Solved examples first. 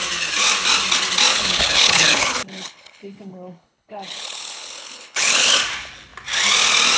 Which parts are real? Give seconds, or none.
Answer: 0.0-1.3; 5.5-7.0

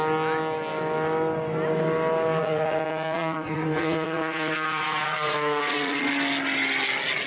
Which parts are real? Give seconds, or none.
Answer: 0.0-2.4; 6.1-7.3

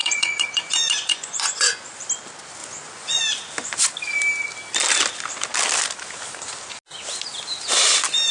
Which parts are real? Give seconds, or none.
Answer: 2.0-2.6; 3.2-8.3

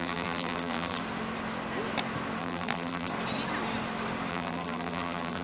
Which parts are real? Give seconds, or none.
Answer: 1.0-2.4; 3.1-4.3